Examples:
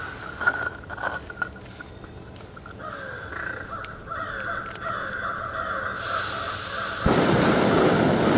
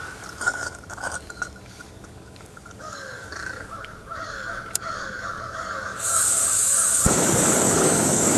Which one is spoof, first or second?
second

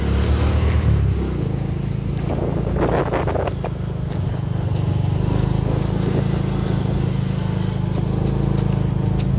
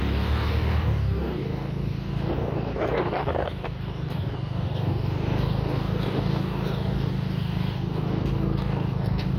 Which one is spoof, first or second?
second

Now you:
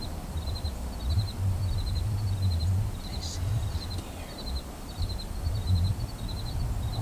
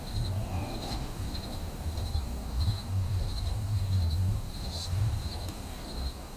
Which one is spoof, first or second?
second